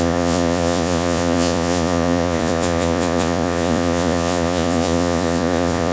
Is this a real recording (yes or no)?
no